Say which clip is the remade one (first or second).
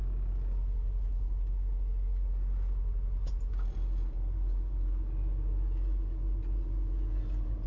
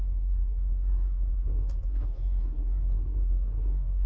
second